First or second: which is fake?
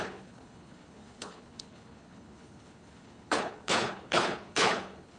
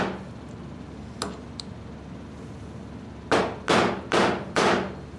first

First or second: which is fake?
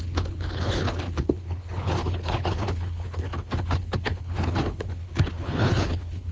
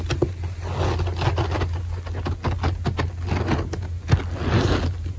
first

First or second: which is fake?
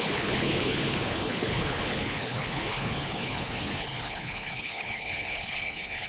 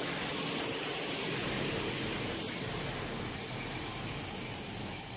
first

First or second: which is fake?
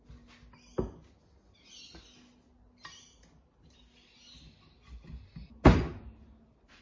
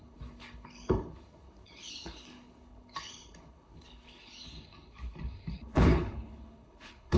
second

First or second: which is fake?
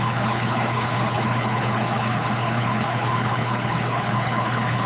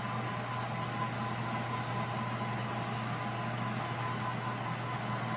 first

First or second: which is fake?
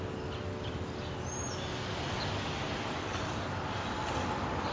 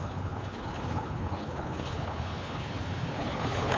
second